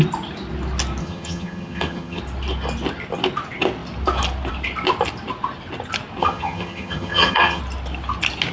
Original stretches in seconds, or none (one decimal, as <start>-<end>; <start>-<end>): 0.0-1.0; 2.2-6.2; 7.6-8.5